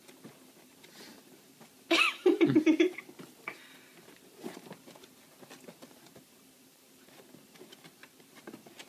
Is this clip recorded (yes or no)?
no